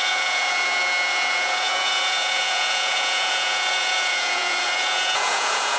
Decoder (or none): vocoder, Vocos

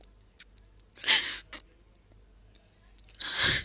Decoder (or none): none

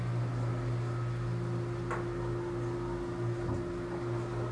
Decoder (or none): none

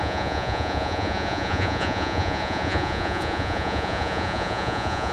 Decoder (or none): vocoder, Vocos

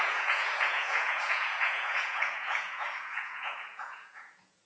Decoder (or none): vocoder, Vocos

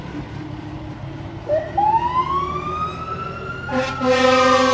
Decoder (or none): none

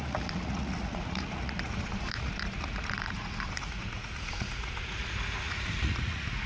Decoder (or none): vocoder, Vocos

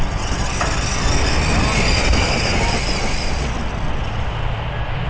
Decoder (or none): none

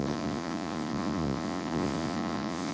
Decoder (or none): vocoder, Vocos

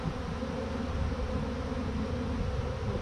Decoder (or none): none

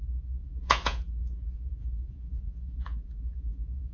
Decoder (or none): vocoder, Vocos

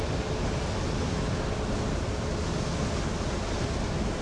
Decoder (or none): none